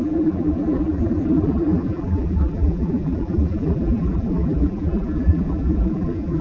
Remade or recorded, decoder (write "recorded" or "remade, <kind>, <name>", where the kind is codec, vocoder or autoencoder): remade, vocoder, BigVGAN v2